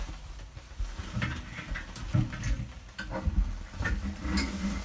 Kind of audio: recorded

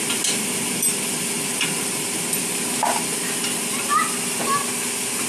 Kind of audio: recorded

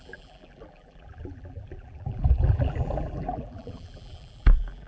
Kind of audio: remade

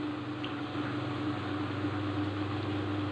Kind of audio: recorded